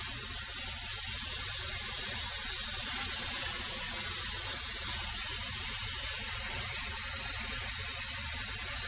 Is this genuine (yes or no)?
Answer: yes